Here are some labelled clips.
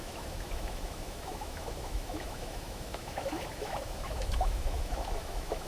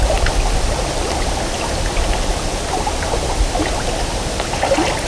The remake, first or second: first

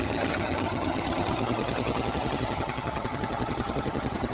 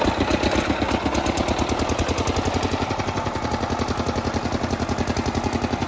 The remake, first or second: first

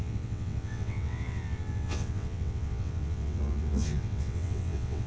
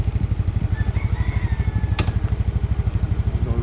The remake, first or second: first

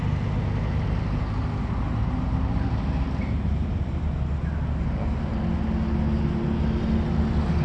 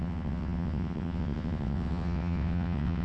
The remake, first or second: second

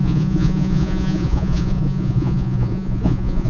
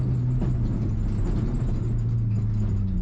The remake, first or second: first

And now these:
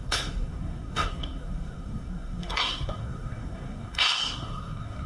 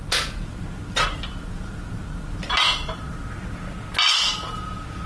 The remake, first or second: first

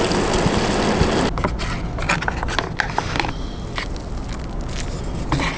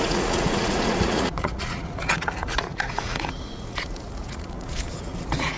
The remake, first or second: second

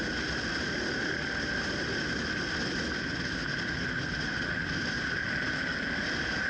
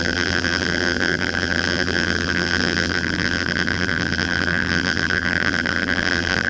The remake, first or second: second